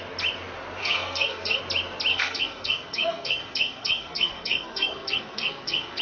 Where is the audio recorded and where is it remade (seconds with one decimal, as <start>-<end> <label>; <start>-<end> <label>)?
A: 0.0-0.8 recorded; 0.8-1.6 remade; 1.6-2.1 recorded; 2.1-6.0 remade